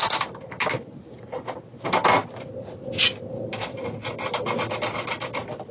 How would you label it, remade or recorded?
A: recorded